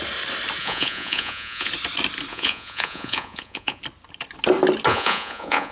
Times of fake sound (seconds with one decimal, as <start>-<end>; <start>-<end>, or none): 0.6-1.7; 2.3-3.8; 4.9-5.7